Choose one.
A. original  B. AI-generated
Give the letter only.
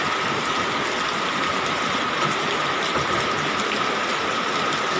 A